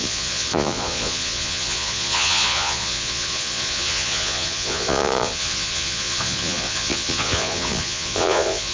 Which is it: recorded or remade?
remade